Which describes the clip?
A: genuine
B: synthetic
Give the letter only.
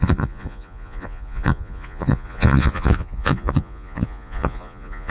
B